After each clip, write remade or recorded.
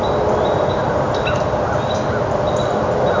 recorded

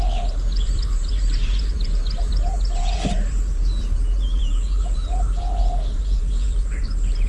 remade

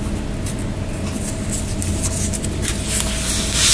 recorded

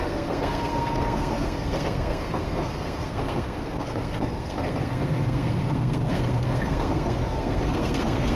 remade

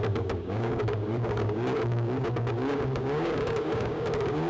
remade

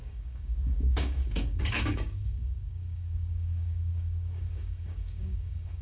remade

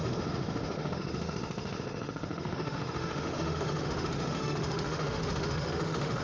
remade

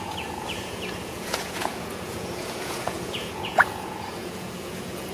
remade